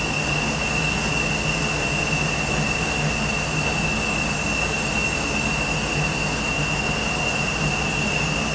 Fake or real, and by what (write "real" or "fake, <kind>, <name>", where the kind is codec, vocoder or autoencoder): real